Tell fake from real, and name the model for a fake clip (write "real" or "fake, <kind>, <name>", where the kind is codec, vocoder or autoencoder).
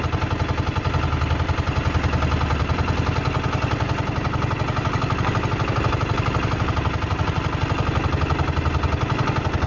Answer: real